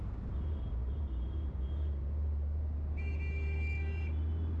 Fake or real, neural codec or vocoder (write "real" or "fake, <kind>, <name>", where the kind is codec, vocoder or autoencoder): real